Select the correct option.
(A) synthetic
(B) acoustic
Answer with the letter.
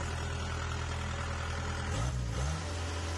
B